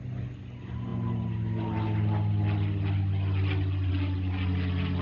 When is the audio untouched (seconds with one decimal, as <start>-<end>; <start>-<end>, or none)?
0.0-5.0